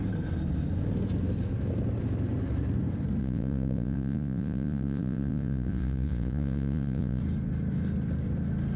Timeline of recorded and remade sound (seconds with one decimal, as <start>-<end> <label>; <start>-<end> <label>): 0.0-3.2 recorded; 3.2-7.2 remade; 7.2-8.8 recorded